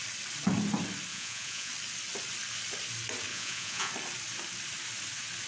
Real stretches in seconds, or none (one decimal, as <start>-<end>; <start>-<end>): 0.0-1.1; 1.7-3.3; 3.9-5.5